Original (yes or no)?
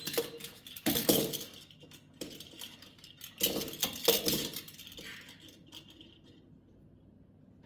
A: yes